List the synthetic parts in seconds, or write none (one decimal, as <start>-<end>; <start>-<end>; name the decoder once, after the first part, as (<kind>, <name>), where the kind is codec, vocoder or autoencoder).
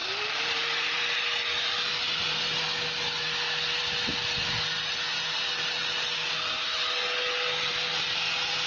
0.0-1.0 (vocoder, BigVGAN v2)